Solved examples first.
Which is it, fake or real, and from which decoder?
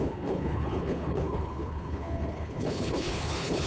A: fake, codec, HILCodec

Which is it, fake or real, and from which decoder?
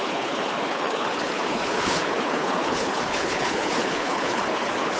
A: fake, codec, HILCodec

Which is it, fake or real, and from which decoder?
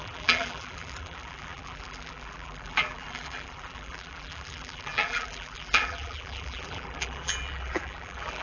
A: fake, vocoder, BigVGAN v2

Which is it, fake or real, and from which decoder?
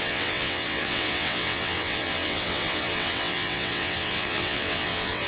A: fake, vocoder, WaveNeXt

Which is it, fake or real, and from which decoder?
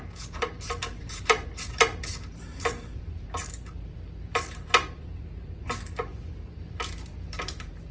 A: fake, vocoder, BigVGAN v2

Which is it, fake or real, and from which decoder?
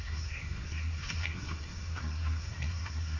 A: fake, codec, SNAC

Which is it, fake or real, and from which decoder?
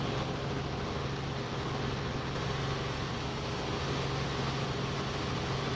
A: real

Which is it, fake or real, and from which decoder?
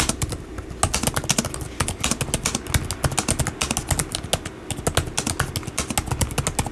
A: real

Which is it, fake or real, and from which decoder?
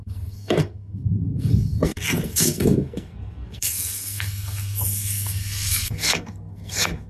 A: fake, codec, SNAC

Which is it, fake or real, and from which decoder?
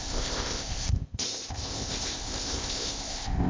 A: fake, codec, ZipCodec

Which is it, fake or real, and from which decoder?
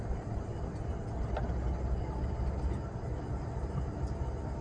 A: real